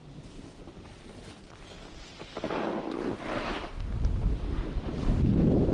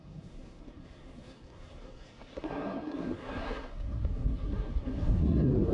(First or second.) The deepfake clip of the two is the second